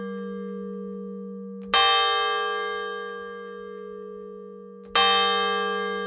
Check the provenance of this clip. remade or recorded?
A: recorded